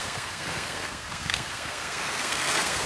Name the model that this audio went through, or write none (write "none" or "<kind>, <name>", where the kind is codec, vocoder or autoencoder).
codec, SNAC